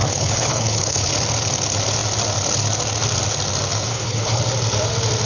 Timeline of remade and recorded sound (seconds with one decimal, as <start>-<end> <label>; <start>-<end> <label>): 0.0-1.1 remade; 1.1-3.9 recorded; 3.9-4.4 remade; 4.4-5.3 recorded